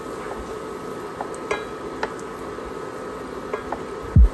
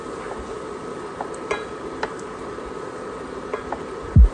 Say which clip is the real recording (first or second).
first